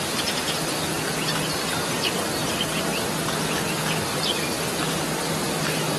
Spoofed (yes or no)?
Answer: no